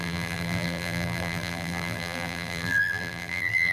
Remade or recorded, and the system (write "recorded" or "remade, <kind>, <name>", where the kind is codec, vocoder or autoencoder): remade, vocoder, BigVGAN v2